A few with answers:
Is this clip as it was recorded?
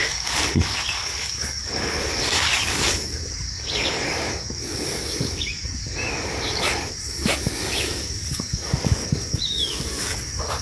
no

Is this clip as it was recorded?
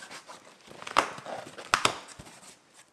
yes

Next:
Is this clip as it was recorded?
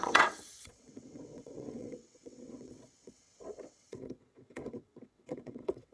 no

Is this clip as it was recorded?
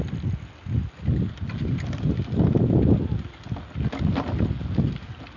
yes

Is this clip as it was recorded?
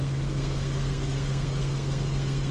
no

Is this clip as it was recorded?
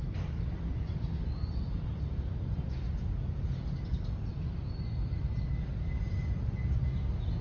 yes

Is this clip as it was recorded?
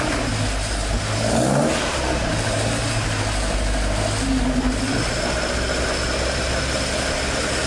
yes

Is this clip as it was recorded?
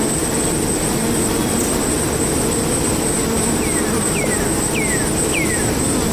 yes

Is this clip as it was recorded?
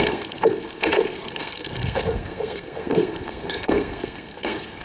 no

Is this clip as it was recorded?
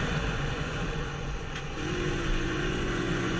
no